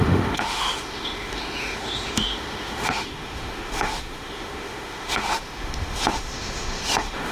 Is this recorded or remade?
remade